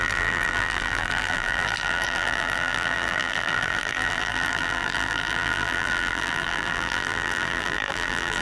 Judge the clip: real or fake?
fake